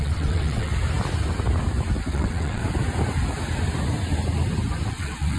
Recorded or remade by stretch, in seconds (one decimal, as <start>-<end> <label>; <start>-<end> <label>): 0.0-0.7 remade; 0.7-2.1 recorded; 2.1-2.6 remade; 2.6-4.9 recorded; 4.9-5.4 remade